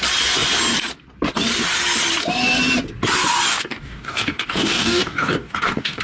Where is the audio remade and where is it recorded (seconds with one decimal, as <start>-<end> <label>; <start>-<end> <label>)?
0.0-3.5 recorded; 3.5-6.0 remade

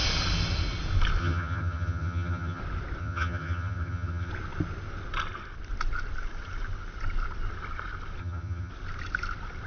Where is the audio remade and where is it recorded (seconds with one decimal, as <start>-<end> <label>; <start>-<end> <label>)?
0.0-1.2 recorded; 1.2-2.6 remade; 2.6-3.0 recorded; 3.0-4.3 remade; 4.3-8.2 recorded; 8.2-8.7 remade; 8.7-9.7 recorded

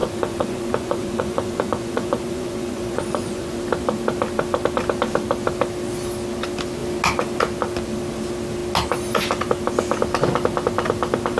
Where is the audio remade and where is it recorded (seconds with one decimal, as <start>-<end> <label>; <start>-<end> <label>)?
0.0-3.6 remade; 3.6-11.4 recorded

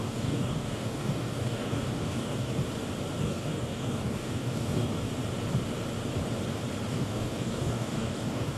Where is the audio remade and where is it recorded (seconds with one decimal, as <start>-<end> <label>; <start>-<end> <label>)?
0.0-2.5 remade; 2.5-3.2 recorded; 3.2-5.1 remade; 5.1-6.9 recorded; 6.9-8.6 remade

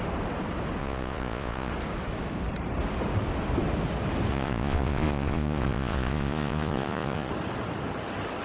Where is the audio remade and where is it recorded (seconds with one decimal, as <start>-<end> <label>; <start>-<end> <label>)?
0.0-0.8 recorded; 0.8-1.7 remade; 1.7-4.3 recorded; 4.3-7.3 remade; 7.3-8.4 recorded

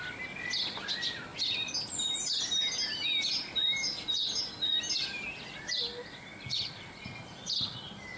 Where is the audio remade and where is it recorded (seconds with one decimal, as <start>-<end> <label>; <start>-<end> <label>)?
0.0-8.2 recorded

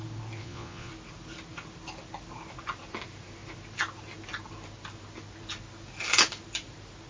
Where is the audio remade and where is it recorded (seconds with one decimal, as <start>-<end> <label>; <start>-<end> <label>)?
0.0-0.4 recorded; 0.4-0.9 remade; 0.9-7.1 recorded

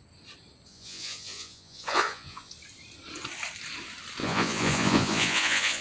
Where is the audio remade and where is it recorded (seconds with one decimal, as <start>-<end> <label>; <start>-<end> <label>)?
0.0-0.7 recorded; 0.7-2.5 remade; 2.5-4.2 recorded; 4.2-5.8 remade